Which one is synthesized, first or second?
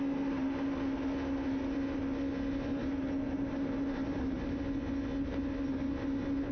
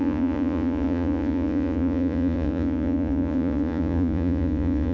second